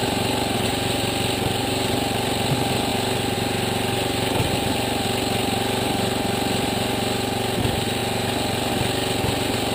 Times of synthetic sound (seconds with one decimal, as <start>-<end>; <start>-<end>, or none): 0.0-0.7